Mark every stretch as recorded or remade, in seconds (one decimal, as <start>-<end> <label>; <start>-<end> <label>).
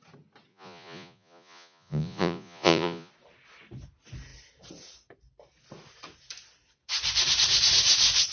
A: 0.0-0.5 recorded; 0.5-3.1 remade; 3.1-8.3 recorded